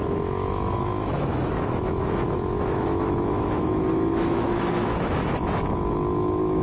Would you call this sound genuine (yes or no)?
no